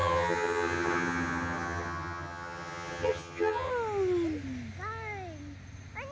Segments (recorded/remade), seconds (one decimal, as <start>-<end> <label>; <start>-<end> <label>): 0.0-3.7 remade; 3.7-6.1 recorded